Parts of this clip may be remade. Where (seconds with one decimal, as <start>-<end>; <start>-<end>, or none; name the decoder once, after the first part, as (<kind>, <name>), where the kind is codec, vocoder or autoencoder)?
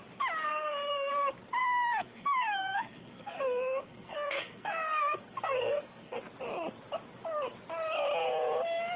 0.5-1.1 (codec, SNAC); 1.6-6.2